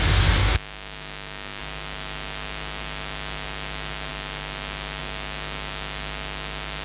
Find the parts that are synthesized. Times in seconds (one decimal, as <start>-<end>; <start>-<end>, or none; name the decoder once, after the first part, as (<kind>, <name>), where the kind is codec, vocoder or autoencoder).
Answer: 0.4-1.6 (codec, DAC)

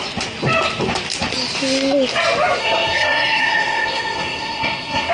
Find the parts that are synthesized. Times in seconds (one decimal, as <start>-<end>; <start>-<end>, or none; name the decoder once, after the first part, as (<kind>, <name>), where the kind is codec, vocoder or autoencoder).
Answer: 2.6-5.1 (codec, SNAC)

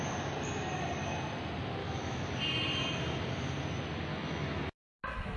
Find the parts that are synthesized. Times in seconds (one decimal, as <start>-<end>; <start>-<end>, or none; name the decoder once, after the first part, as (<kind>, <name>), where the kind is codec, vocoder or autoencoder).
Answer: 1.8-2.3 (autoencoder, DAC-VAE); 4.1-4.6